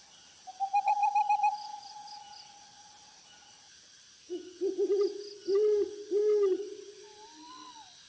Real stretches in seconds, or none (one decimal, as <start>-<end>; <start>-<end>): 0.0-8.1